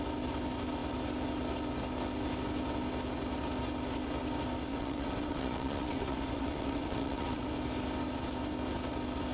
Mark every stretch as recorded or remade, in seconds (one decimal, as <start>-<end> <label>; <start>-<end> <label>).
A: 0.0-4.7 recorded; 4.7-7.4 remade; 7.4-9.3 recorded